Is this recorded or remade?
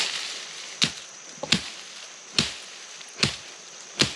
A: recorded